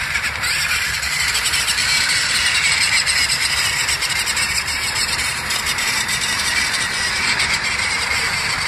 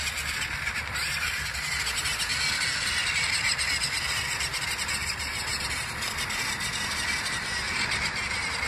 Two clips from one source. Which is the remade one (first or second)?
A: first